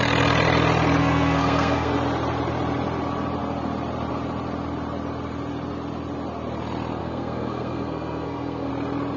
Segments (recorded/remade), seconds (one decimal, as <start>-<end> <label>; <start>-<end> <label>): 0.0-1.0 recorded; 1.0-1.9 remade; 1.9-7.0 recorded; 7.0-8.7 remade; 8.7-9.2 recorded